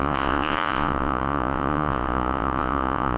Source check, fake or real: fake